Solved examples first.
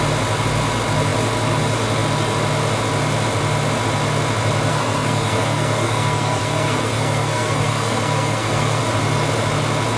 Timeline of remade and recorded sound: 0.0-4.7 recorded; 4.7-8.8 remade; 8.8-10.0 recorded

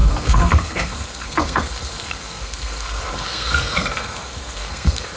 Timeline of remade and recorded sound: 0.0-5.2 remade

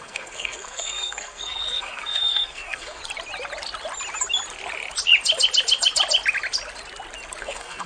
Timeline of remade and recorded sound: 0.0-3.0 remade; 3.0-7.4 recorded; 7.4-7.9 remade

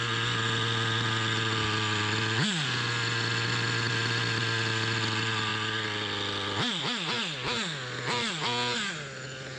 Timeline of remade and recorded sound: 0.0-9.6 recorded

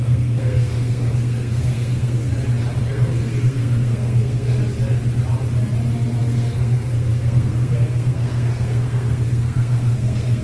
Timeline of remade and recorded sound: 0.0-2.3 remade; 2.3-2.8 recorded; 2.8-4.6 remade; 4.6-6.2 recorded; 6.2-10.4 remade

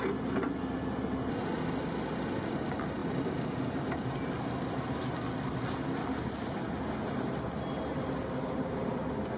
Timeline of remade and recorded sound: 0.0-9.4 recorded

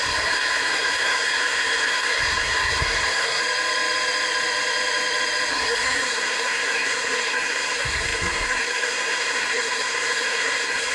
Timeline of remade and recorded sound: 0.0-3.4 remade; 3.4-5.5 recorded; 5.5-10.9 remade

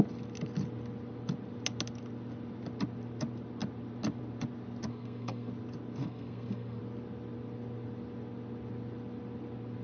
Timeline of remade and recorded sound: 0.0-4.9 recorded; 4.9-5.5 remade; 5.5-6.0 recorded; 6.0-6.8 remade; 6.8-9.8 recorded